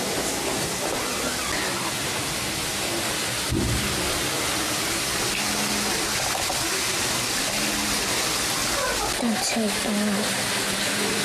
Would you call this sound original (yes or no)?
yes